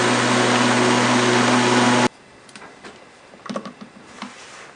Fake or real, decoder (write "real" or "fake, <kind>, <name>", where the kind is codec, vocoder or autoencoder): real